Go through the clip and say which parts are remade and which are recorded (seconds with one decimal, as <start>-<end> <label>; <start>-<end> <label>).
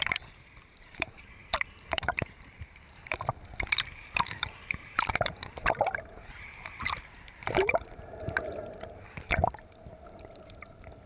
0.0-11.1 remade